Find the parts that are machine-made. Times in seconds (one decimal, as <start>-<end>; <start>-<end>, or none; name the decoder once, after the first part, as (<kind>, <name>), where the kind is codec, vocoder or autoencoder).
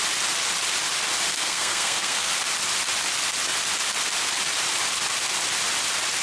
1.3-2.3 (codec, SNAC)